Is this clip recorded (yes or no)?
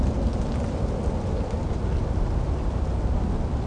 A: yes